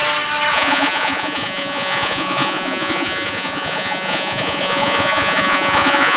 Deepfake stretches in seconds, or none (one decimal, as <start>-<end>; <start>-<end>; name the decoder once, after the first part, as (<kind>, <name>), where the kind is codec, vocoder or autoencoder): 0.5-6.2 (vocoder, Vocos)